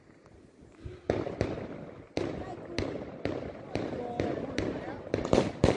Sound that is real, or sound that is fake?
real